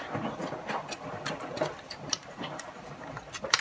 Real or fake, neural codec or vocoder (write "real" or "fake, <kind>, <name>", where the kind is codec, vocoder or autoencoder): fake, vocoder, BigVGAN v2